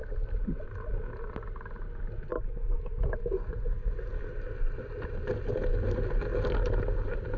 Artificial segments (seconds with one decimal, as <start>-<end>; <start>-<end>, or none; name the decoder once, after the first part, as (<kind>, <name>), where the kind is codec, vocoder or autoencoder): none

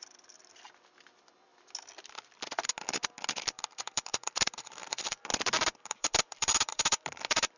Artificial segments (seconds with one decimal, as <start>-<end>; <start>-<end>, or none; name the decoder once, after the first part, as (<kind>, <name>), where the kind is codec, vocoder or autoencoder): 0.0-1.5 (vocoder, BigVGAN v2); 3.4-7.6

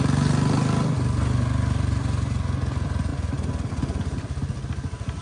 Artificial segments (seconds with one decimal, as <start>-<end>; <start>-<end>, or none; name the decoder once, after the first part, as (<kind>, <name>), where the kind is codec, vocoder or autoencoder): none

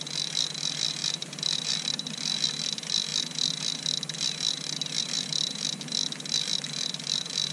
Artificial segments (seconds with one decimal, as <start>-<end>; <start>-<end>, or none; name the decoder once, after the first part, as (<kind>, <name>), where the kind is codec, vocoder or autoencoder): 1.0-1.9 (vocoder, BigVGAN v2)

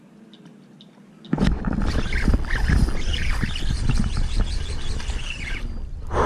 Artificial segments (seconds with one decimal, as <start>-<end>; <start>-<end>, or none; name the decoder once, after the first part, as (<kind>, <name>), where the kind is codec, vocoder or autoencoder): 3.1-5.0 (vocoder, BigVGAN v2)

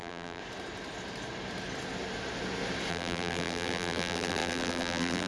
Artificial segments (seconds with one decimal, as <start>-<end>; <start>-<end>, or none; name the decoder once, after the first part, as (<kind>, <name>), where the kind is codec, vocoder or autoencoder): 0.0-0.4 (vocoder, BigVGAN v2); 2.9-5.3

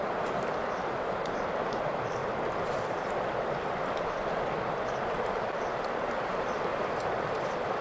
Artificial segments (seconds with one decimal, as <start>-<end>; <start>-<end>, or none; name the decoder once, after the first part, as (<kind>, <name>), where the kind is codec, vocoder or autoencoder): 0.0-2.2 (vocoder, BigVGAN v2); 5.0-6.7